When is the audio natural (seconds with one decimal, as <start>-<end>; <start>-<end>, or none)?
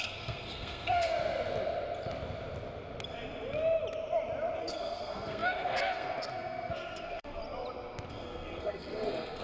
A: 1.1-4.6; 7.4-8.1